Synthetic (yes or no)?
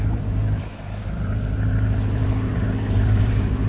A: yes